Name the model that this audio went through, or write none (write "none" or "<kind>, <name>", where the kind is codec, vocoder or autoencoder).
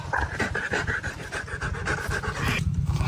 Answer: none